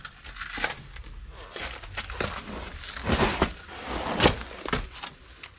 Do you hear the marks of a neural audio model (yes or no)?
no